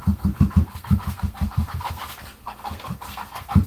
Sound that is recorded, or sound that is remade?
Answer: remade